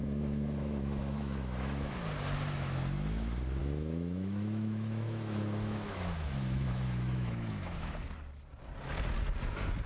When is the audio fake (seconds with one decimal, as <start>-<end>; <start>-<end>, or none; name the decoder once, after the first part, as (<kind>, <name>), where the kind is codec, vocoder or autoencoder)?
0.0-1.9 (autoencoder, DAC-VAE); 3.6-8.0